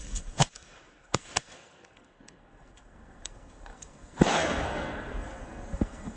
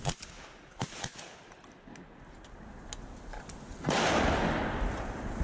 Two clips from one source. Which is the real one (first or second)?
second